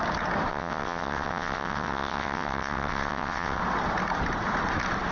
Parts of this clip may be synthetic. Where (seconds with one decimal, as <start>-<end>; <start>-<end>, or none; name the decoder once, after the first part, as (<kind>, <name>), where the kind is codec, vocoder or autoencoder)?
0.5-3.6 (vocoder, WaveNeXt)